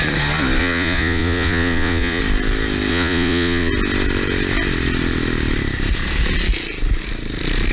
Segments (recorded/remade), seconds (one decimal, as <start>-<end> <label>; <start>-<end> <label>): 0.0-0.6 recorded; 0.6-2.2 remade; 2.2-2.9 recorded; 2.9-3.7 remade; 3.7-7.7 recorded

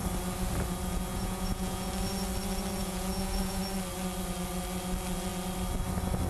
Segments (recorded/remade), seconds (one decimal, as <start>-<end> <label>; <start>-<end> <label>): 0.0-1.1 recorded; 1.1-1.9 remade; 1.9-2.8 recorded; 2.8-3.6 remade; 3.6-6.3 recorded